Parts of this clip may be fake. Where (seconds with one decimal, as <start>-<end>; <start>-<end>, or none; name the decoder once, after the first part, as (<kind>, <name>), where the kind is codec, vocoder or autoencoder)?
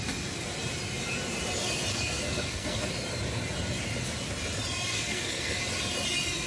1.9-2.9 (codec, SNAC); 4.9-5.6